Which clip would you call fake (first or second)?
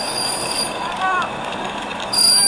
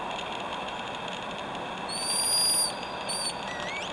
first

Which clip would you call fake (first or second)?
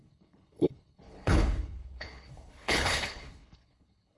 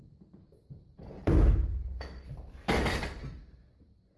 first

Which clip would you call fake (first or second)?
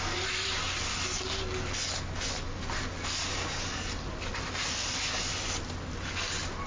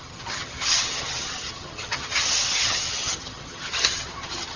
second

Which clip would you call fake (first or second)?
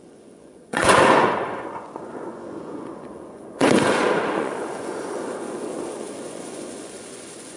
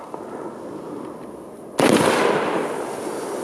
first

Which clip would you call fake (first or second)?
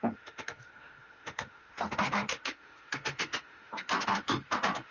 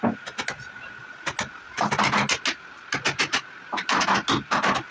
first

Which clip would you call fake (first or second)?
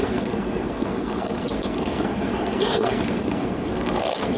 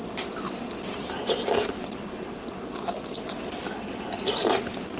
first